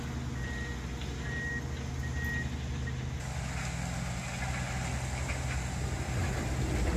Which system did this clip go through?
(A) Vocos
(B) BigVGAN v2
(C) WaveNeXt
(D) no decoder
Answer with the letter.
D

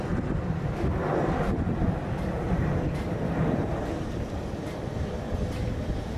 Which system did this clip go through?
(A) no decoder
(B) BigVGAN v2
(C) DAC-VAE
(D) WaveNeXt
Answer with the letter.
B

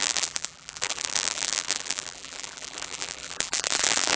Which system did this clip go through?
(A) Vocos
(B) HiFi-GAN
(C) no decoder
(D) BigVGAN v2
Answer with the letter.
D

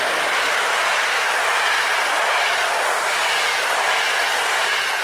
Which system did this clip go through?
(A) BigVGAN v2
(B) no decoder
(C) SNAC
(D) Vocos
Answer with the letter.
A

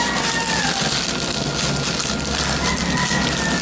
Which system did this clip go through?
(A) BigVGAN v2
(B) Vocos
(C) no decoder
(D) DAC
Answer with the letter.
C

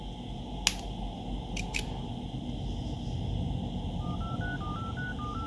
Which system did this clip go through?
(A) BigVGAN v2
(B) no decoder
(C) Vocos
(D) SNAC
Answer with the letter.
B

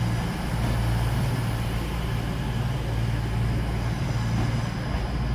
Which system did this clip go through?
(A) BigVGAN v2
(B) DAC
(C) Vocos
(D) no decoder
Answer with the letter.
D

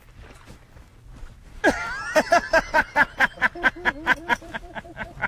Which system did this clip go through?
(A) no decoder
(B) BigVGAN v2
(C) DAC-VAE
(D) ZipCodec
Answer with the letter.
B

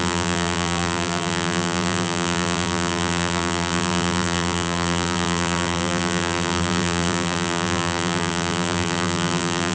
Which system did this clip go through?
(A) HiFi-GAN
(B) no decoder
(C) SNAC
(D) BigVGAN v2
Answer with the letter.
D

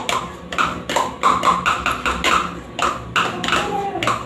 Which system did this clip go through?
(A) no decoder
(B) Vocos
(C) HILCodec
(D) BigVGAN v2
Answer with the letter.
A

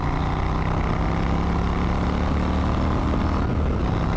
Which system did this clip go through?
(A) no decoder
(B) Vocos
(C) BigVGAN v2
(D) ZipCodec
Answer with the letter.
A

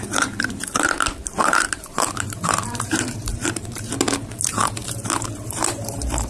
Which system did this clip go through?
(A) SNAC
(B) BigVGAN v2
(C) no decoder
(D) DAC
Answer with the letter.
B